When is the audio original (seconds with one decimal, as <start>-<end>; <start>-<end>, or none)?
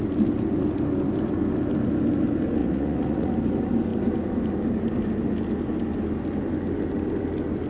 0.0-2.6; 3.3-7.7